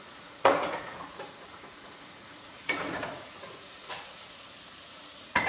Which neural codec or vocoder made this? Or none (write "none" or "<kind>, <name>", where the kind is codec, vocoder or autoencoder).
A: vocoder, Vocos